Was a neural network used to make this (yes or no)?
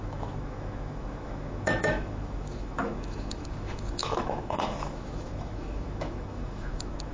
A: yes